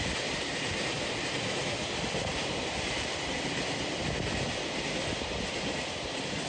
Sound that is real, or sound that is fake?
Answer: real